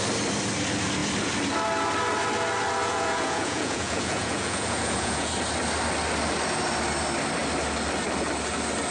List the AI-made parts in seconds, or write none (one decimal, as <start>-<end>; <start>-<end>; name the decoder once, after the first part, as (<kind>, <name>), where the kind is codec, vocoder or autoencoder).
2.8-5.3 (vocoder, Vocos)